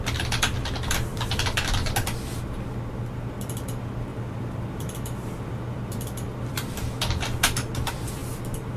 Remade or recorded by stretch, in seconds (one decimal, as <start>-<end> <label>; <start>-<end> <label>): 0.0-1.1 recorded; 1.1-1.9 remade; 1.9-4.1 recorded; 4.1-6.7 remade; 6.7-8.2 recorded; 8.2-8.8 remade